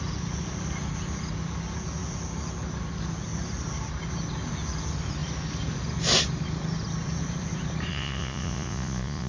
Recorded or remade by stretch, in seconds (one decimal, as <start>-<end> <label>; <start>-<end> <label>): 0.0-7.9 recorded; 7.9-9.3 remade